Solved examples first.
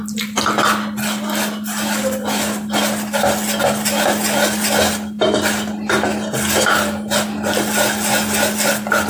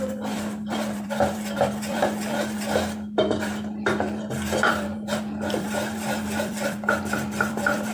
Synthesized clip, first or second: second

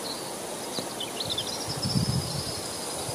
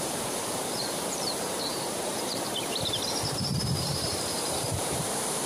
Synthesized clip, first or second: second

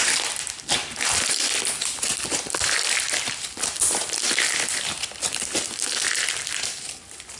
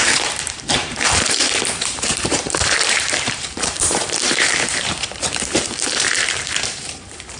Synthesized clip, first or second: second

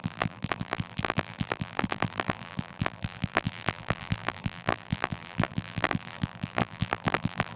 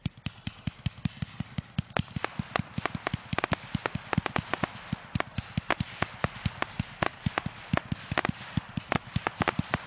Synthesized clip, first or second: first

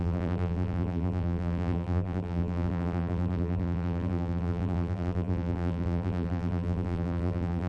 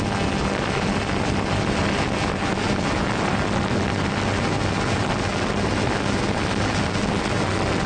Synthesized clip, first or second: first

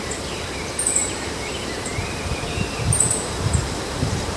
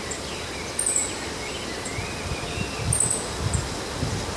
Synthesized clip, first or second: first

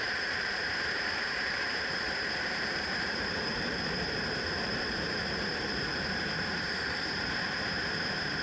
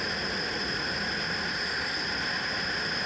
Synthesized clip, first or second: first